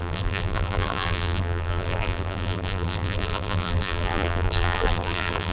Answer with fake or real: fake